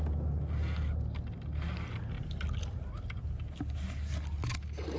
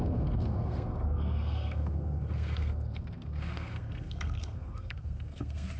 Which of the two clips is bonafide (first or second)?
first